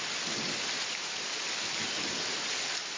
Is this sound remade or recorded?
remade